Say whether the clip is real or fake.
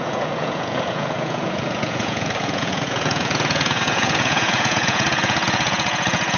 fake